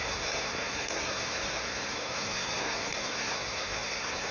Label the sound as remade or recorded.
remade